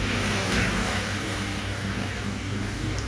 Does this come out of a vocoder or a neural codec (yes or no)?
yes